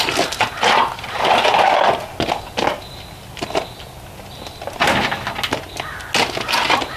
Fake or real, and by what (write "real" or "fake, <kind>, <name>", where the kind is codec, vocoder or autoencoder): real